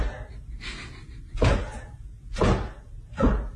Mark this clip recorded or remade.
recorded